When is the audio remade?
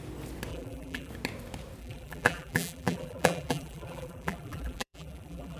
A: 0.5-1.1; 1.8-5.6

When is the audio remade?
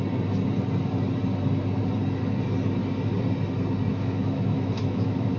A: 3.9-5.4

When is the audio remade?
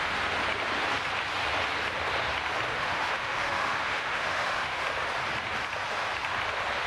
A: 2.7-4.8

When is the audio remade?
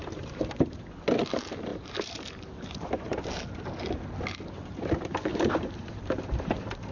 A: 0.0-0.9; 1.7-2.8; 5.3-6.9